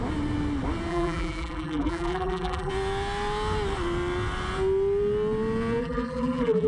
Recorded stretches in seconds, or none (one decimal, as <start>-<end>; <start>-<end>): 0.0-0.9; 2.7-5.8